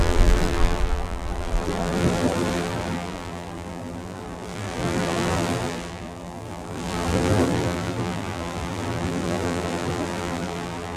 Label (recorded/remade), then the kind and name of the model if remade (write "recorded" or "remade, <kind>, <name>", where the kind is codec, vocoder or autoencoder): remade, vocoder, BigVGAN v2